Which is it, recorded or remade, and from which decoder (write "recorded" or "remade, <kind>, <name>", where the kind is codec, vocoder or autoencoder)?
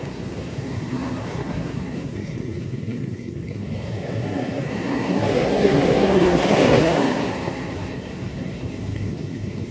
remade, codec, SNAC